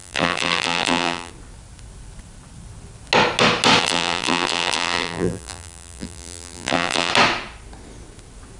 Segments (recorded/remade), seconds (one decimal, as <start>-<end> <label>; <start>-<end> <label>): 0.0-1.3 remade; 1.3-3.8 recorded; 3.8-7.1 remade; 7.1-8.6 recorded